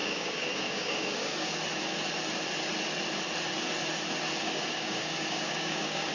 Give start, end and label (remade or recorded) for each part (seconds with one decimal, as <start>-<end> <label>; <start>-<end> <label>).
0.0-1.5 remade; 1.5-4.4 recorded; 4.4-6.1 remade